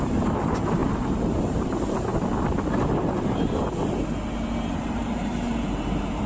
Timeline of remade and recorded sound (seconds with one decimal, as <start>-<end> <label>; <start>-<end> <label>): 0.0-2.1 remade; 2.1-4.7 recorded; 4.7-6.3 remade